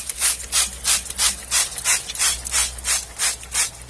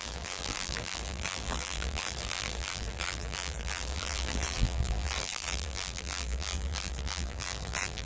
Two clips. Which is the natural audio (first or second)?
first